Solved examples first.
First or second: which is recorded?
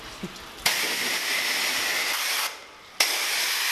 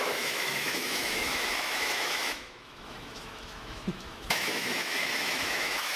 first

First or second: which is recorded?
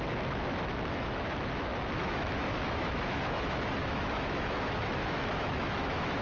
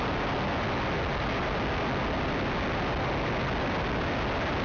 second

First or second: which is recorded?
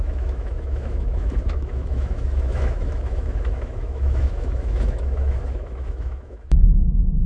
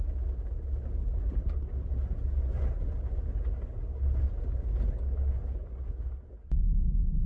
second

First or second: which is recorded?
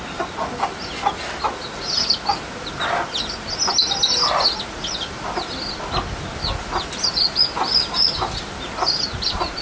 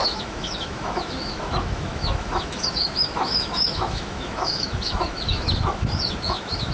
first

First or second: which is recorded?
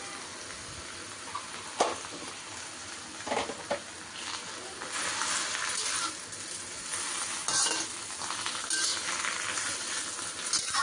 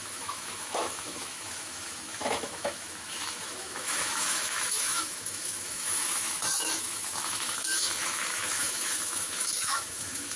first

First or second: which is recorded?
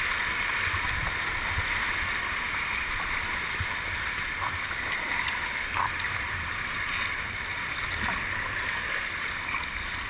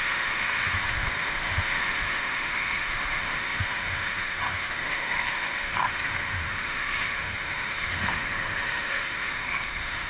first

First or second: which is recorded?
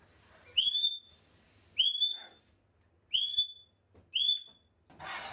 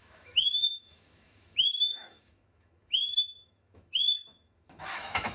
first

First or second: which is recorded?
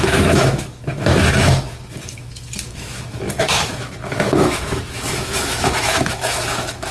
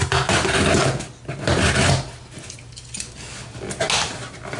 second